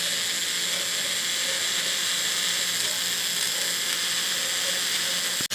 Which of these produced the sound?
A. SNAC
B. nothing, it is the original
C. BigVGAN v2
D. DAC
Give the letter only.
B